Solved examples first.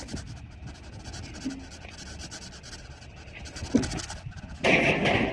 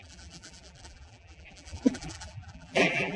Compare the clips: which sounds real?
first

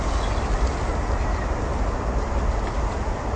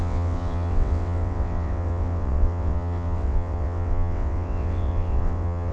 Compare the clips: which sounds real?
first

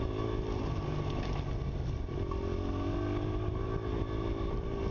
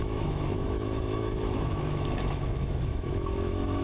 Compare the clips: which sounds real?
first